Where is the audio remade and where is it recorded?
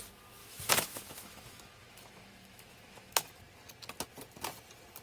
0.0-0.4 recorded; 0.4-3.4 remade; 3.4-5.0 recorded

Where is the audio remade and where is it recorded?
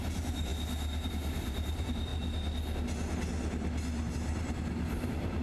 0.0-0.5 remade; 0.5-1.1 recorded; 1.1-2.1 remade; 2.1-4.1 recorded; 4.1-5.4 remade